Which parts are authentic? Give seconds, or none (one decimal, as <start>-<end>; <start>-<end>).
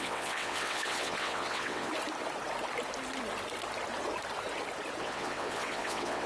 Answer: 1.9-5.0